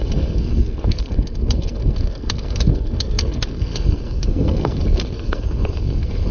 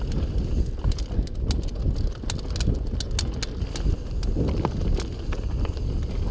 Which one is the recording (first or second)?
second